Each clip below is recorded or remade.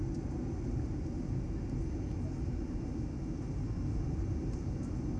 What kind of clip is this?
recorded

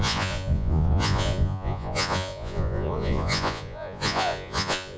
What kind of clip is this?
remade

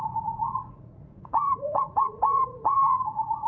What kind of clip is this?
remade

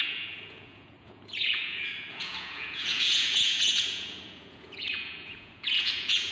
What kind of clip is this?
remade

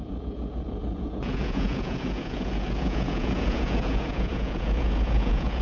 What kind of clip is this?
remade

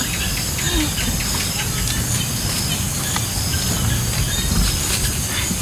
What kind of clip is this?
recorded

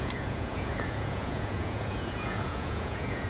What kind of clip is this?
remade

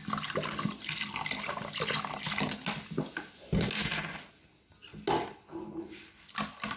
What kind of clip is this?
recorded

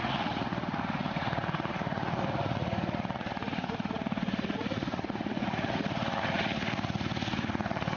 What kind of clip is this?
remade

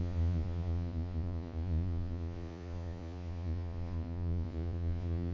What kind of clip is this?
remade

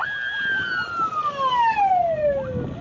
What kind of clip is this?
recorded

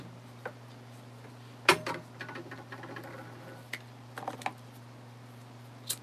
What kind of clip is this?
recorded